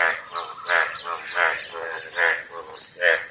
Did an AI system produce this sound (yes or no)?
no